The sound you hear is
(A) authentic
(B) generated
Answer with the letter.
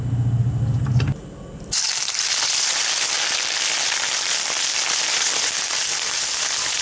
A